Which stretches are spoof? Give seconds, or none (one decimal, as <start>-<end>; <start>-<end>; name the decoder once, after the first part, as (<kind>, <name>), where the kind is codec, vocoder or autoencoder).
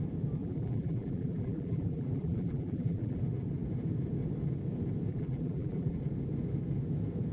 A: 0.4-3.2 (vocoder, BigVGAN v2); 5.1-6.0